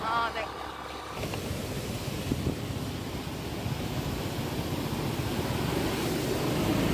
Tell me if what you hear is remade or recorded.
recorded